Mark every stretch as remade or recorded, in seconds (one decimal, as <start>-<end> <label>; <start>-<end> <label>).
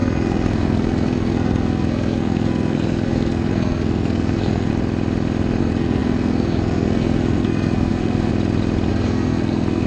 0.0-4.7 remade; 4.7-5.6 recorded; 5.6-8.3 remade; 8.3-8.9 recorded; 8.9-9.9 remade